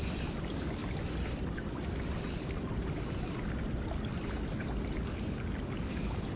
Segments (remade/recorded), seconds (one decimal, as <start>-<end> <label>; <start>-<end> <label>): 0.0-6.4 recorded